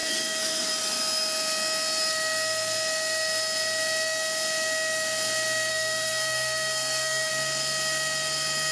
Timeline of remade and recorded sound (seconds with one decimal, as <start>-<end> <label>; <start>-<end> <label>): 0.0-0.7 remade; 0.7-5.7 recorded; 5.7-7.3 remade; 7.3-8.7 recorded